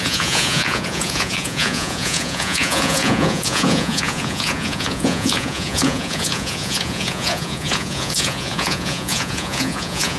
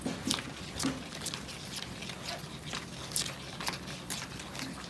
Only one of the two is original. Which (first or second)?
second